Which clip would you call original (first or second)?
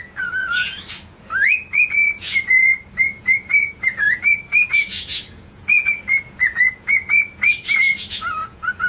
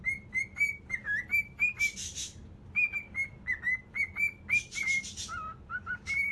second